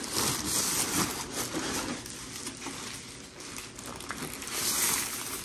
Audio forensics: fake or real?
real